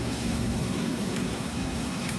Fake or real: fake